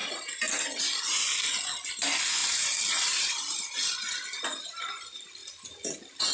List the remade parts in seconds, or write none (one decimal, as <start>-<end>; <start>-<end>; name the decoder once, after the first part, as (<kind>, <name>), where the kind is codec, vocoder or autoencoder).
0.0-0.8 (vocoder, BigVGAN v2); 2.4-4.8